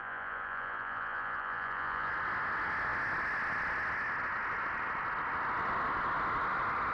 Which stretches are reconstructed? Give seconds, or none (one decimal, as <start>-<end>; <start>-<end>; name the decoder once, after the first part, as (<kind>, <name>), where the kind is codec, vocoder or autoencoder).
0.0-2.1 (vocoder, Vocos)

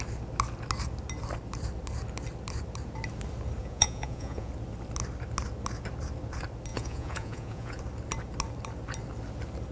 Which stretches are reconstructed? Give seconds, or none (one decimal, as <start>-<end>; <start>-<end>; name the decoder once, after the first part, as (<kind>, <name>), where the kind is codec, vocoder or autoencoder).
3.6-4.5 (vocoder, Vocos); 6.7-7.8

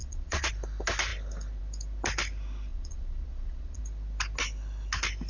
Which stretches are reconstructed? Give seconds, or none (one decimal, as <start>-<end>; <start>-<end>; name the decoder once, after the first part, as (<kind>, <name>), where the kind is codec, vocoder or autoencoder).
0.0-0.5 (vocoder, Vocos); 2.7-3.8

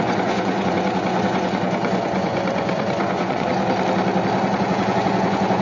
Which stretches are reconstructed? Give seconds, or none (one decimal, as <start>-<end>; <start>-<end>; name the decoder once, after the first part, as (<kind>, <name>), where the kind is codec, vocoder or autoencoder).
0.0-3.5 (vocoder, Vocos); 4.6-5.6

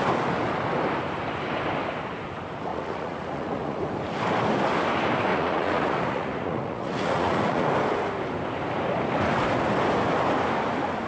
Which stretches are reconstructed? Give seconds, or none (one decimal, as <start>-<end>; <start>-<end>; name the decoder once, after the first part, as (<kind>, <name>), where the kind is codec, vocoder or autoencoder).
2.7-3.8 (vocoder, Vocos); 5.3-7.7

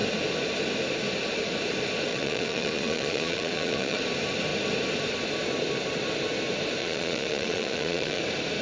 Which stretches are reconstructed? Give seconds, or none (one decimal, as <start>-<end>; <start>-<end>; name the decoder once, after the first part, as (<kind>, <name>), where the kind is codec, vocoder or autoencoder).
2.1-4.0 (vocoder, Vocos); 6.8-8.2

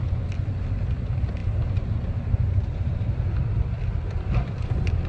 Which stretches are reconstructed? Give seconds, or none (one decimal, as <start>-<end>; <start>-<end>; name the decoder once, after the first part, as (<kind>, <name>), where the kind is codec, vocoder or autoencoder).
none